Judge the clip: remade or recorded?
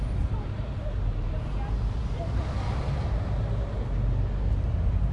recorded